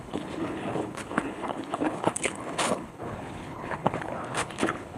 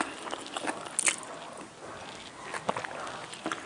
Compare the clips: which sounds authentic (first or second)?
second